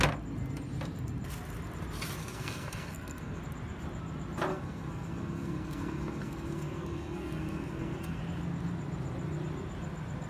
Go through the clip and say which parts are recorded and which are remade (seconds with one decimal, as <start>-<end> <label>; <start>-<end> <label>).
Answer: 0.0-2.2 recorded; 2.2-3.4 remade; 3.4-4.5 recorded; 4.5-8.2 remade; 8.2-10.3 recorded